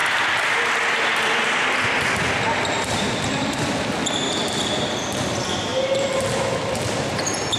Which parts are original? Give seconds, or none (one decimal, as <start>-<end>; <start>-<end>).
0.0-7.6